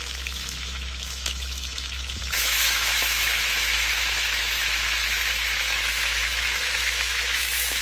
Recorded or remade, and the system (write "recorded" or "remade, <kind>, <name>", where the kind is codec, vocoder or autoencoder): remade, autoencoder, DAC-VAE